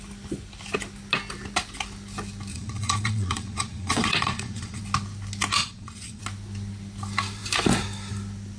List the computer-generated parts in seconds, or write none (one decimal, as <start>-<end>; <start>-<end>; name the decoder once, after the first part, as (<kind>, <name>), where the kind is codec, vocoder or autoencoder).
2.5-4.8 (vocoder, Vocos); 5.6-6.2